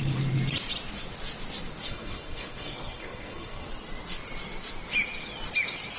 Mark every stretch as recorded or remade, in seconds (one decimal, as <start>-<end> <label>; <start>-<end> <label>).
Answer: 0.0-1.8 recorded; 1.8-3.7 remade; 3.7-6.0 recorded